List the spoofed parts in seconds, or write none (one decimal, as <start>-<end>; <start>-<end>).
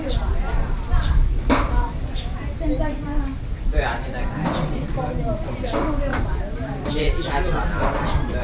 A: 0.0-8.4